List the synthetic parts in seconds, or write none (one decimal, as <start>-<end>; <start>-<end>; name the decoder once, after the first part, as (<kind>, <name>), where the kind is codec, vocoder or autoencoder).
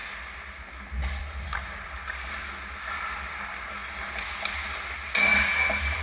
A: none